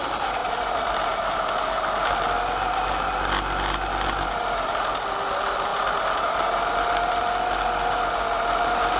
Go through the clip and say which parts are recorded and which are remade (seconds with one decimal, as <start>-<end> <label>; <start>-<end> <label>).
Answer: 0.0-9.0 recorded